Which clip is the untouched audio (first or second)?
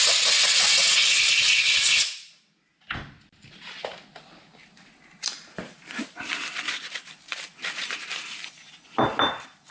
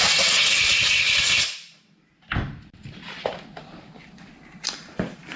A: first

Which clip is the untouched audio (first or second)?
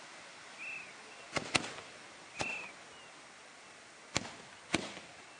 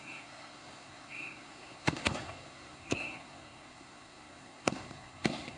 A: first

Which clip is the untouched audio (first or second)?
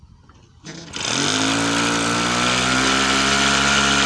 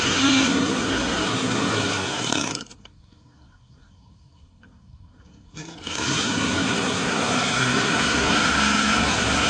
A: first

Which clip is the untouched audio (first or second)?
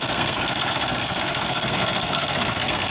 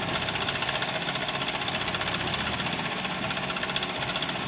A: second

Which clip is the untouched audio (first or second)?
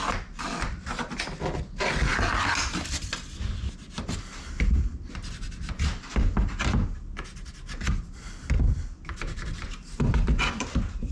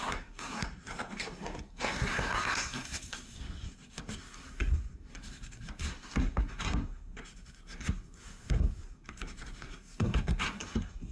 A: first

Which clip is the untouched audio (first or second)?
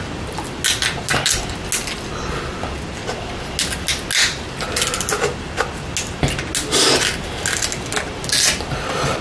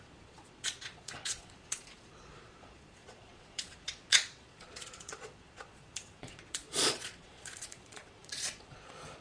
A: first